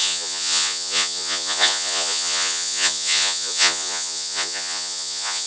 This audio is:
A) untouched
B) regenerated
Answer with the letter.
B